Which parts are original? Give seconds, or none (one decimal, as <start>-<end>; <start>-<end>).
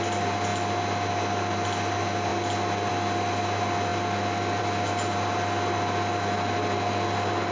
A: 0.0-7.5